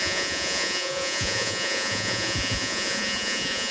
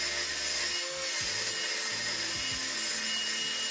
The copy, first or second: first